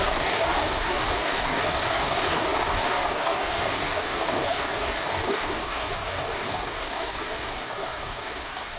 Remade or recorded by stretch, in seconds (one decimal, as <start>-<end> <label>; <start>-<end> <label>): 0.0-8.8 remade